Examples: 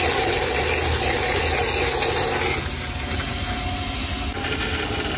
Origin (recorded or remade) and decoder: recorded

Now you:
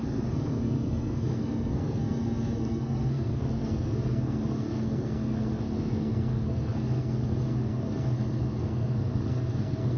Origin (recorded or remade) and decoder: remade, codec, SNAC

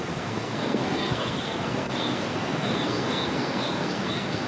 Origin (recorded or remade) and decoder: remade, codec, SNAC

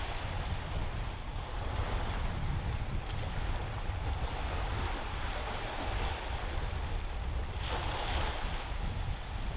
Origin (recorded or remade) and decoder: recorded